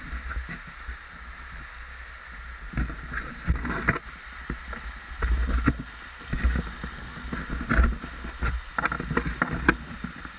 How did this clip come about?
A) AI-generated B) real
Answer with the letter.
B